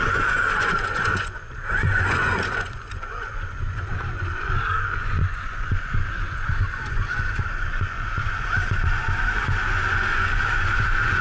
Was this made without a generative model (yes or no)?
no